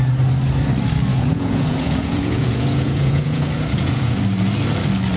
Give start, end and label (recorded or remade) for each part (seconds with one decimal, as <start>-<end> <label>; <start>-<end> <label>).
0.0-1.1 recorded; 1.1-4.2 remade; 4.2-5.2 recorded